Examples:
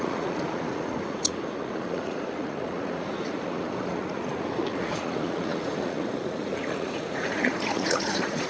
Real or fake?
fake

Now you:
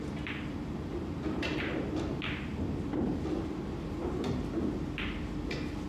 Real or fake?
real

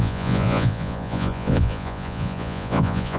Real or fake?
fake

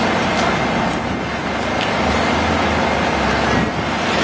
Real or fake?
real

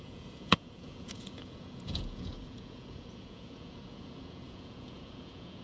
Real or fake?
fake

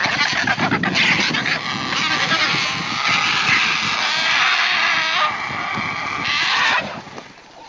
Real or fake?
real